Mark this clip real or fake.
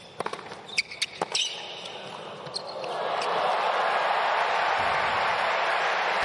real